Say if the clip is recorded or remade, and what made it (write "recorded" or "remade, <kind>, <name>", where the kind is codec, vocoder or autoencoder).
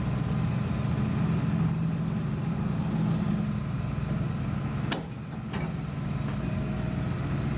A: recorded